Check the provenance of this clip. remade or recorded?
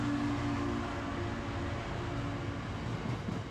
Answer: recorded